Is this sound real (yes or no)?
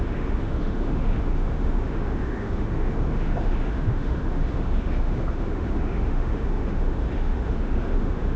no